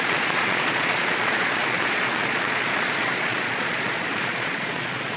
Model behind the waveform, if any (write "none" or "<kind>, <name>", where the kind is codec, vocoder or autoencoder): vocoder, Vocos